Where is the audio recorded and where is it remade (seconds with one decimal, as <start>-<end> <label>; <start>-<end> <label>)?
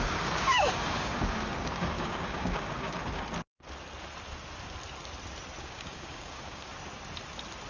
0.0-3.0 remade; 3.0-5.6 recorded; 5.6-6.7 remade; 6.7-7.7 recorded